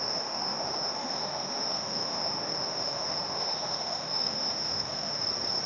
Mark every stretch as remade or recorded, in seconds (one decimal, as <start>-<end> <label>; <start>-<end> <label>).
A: 0.0-5.2 remade; 5.2-5.7 recorded